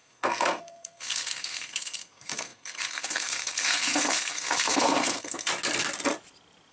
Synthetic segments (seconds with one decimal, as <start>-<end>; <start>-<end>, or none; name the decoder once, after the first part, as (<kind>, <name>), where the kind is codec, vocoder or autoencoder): 0.0-5.5 (codec, SNAC)